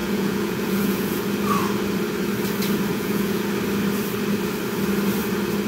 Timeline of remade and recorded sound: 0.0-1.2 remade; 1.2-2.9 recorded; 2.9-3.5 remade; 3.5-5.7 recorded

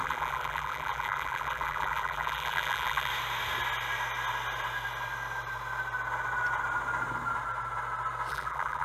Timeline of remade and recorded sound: 0.0-3.1 remade; 3.1-8.3 recorded; 8.3-8.8 remade

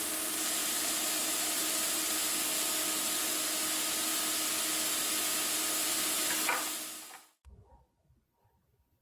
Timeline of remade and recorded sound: 0.0-0.6 recorded; 0.6-1.9 remade; 1.9-9.0 recorded

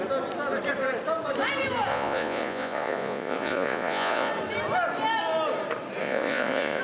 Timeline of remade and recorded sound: 0.0-1.9 recorded; 1.9-4.3 remade; 4.3-6.0 recorded; 6.0-6.8 remade

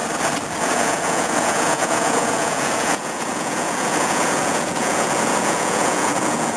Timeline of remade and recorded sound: 0.0-0.7 recorded; 0.7-6.6 remade

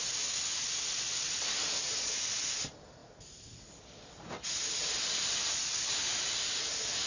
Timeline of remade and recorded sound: 0.0-7.1 recorded

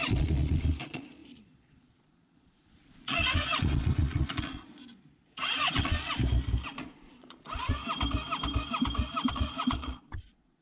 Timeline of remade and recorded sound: 0.0-6.2 remade; 6.2-6.9 recorded; 6.9-7.8 remade; 7.8-9.3 recorded; 9.3-10.6 remade